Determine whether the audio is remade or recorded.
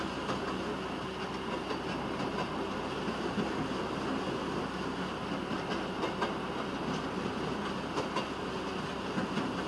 recorded